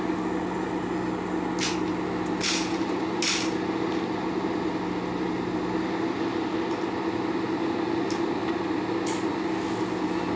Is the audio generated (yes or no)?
no